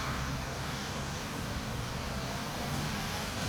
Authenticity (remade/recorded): remade